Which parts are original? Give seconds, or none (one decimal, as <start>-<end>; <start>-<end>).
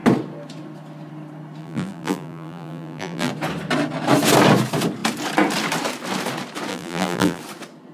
0.0-1.6; 3.3-6.7; 7.4-7.9